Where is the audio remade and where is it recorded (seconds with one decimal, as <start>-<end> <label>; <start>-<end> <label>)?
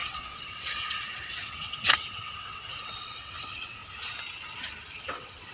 0.0-3.8 remade; 3.8-5.0 recorded; 5.0-5.5 remade